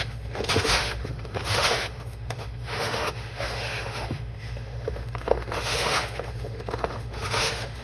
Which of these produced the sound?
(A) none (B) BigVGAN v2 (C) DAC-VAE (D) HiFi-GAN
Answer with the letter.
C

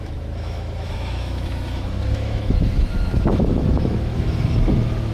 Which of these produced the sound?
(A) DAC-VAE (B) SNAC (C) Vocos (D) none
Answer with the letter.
A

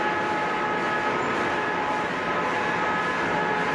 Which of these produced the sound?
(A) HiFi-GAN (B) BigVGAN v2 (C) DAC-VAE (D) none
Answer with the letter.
D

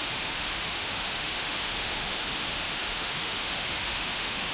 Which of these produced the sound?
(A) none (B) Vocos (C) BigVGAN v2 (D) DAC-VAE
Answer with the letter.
D